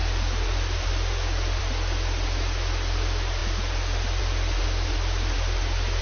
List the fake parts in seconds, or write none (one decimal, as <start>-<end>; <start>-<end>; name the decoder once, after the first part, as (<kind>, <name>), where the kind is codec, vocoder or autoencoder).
none